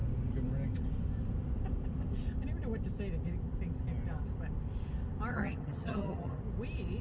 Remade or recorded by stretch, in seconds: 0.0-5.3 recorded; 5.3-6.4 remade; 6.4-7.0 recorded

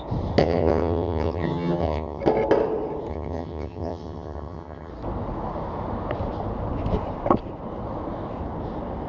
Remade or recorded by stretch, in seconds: 0.0-0.4 recorded; 0.4-2.2 remade; 2.2-3.1 recorded; 3.1-4.9 remade; 4.9-9.1 recorded

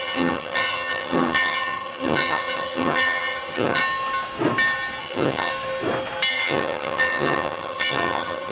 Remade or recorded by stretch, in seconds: 0.0-3.8 remade; 3.8-5.0 recorded; 5.0-5.5 remade; 5.5-6.3 recorded; 6.3-8.5 remade

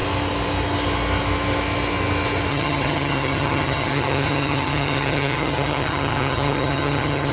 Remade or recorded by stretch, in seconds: 0.0-2.5 recorded; 2.5-7.3 remade

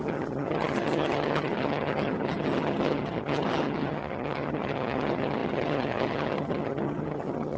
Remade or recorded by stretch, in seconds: 0.0-7.6 remade

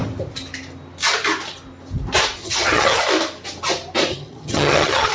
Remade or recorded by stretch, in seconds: 0.0-2.4 recorded; 2.4-3.0 remade; 3.0-4.1 recorded; 4.1-5.1 remade

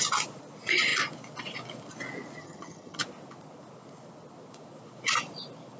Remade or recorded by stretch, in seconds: 0.0-2.4 recorded; 2.4-3.0 remade; 3.0-5.8 recorded

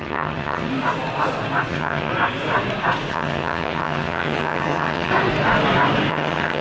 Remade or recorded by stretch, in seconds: 0.0-0.7 remade; 0.7-1.7 recorded; 1.7-2.1 remade; 2.1-3.1 recorded; 3.1-5.1 remade; 5.1-6.1 recorded; 6.1-6.6 remade